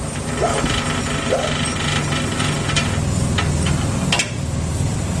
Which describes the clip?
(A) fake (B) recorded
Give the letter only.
B